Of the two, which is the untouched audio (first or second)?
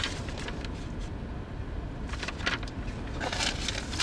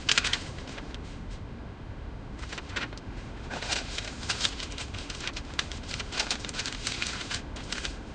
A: first